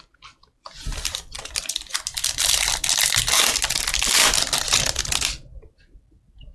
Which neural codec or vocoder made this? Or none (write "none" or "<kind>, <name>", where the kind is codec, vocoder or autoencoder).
none